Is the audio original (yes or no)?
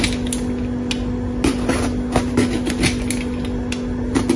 yes